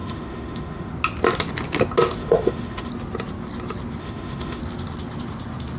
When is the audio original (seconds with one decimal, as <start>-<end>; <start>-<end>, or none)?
0.9-2.2; 2.9-4.0; 4.6-5.8